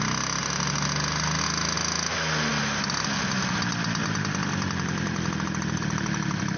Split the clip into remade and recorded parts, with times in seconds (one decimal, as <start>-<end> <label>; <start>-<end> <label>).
0.0-6.6 recorded